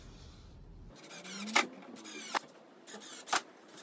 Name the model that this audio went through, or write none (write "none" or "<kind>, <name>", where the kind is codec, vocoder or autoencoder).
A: none